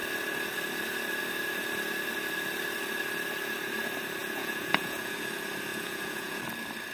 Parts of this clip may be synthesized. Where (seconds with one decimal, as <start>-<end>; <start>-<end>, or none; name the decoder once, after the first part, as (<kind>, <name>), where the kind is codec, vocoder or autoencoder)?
4.2-5.2 (vocoder, Vocos); 5.7-6.4